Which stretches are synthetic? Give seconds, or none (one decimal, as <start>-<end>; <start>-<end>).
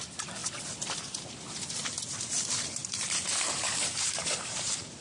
2.8-4.4